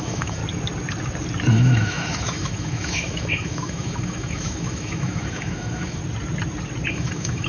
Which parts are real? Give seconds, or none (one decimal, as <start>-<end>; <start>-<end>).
0.4-1.5; 6.0-6.9